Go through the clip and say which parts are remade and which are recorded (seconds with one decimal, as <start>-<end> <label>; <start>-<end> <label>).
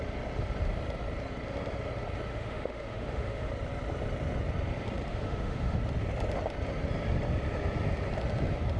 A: 0.0-2.3 recorded; 2.3-3.5 remade; 3.5-5.1 recorded; 5.1-5.8 remade; 5.8-8.8 recorded